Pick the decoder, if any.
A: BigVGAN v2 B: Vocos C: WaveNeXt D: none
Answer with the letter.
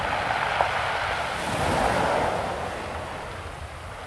D